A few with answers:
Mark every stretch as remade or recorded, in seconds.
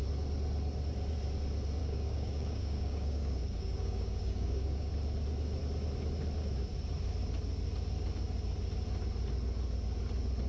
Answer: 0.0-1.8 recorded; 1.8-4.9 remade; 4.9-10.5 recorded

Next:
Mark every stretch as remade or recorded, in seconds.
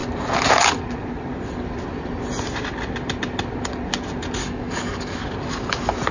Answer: 0.0-4.4 recorded; 4.4-5.2 remade; 5.2-6.1 recorded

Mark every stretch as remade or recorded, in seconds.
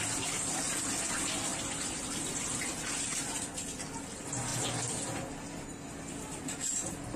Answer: 0.0-7.2 recorded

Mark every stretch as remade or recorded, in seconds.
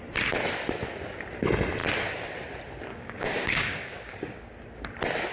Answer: 0.0-2.9 recorded; 2.9-4.4 remade; 4.4-5.3 recorded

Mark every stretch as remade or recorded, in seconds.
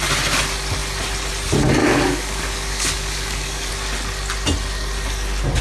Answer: 0.0-1.8 recorded; 1.8-3.7 remade; 3.7-5.6 recorded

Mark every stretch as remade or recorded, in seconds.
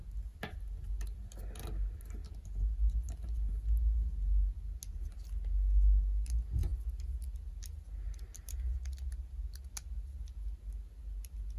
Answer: 0.0-11.6 recorded